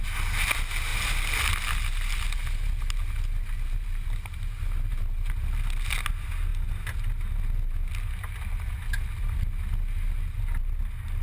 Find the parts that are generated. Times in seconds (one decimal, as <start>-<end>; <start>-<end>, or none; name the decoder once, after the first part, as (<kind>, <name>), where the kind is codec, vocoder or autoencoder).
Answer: none